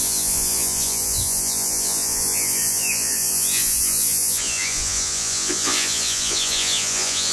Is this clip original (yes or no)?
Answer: no